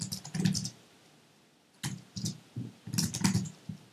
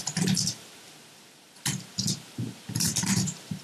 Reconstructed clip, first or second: second